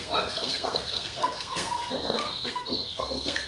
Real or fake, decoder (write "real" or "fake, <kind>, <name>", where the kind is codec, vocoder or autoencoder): fake, codec, SNAC